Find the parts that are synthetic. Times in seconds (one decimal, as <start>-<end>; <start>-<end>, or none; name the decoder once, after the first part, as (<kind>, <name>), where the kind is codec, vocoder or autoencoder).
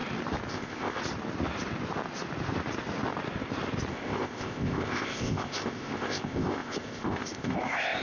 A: 0.5-1.0 (codec, ZipCodec); 3.9-8.0